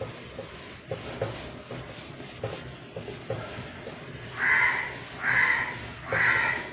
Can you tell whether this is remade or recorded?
recorded